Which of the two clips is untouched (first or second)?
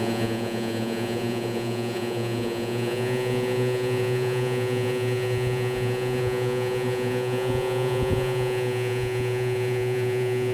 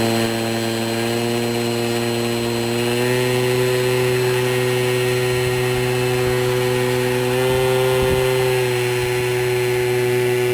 second